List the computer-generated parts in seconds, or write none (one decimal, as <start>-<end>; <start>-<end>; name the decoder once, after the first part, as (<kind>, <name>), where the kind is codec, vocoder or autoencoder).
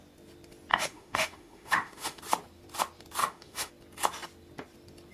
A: 0.7-2.2 (autoencoder, DAC-VAE); 3.2-3.7